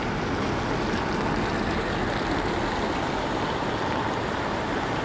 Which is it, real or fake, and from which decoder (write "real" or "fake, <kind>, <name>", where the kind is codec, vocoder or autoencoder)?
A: real